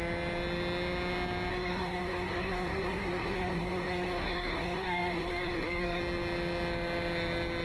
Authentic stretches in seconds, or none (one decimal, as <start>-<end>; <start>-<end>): 0.0-1.5; 6.0-7.6